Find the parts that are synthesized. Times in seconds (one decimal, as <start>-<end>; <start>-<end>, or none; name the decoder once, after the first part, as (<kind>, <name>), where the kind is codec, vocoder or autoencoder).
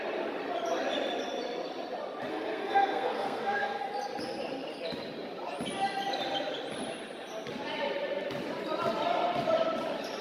2.3-3.8 (codec, SNAC)